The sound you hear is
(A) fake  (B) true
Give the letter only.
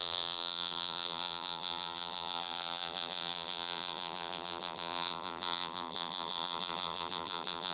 A